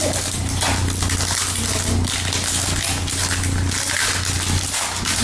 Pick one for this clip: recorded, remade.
recorded